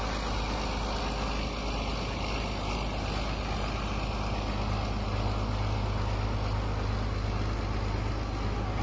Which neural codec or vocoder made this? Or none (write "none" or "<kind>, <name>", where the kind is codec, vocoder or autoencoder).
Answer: none